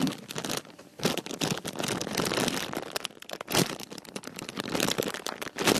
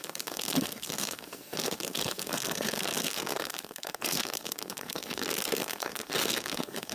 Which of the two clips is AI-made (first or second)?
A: second